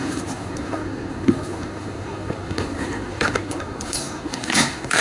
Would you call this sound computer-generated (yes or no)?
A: yes